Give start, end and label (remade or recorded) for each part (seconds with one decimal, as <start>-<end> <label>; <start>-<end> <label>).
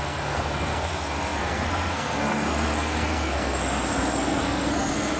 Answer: 0.0-5.2 remade